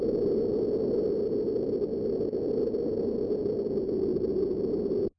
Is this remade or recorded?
recorded